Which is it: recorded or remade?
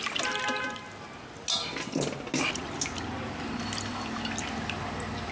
recorded